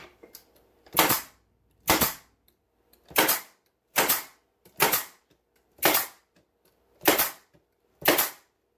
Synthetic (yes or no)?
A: yes